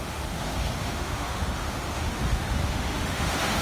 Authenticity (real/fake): fake